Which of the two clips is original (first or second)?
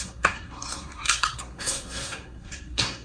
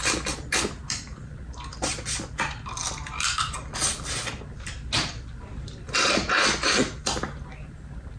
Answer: second